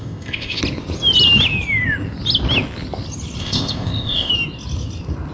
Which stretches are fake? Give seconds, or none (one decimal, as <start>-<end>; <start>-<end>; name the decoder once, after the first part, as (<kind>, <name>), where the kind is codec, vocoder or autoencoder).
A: 0.0-0.6 (codec, ZipCodec); 3.4-4.3